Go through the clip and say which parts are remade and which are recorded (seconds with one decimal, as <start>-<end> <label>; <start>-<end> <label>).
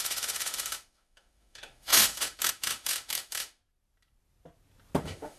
0.0-3.6 remade; 3.6-5.0 recorded; 5.0-5.4 remade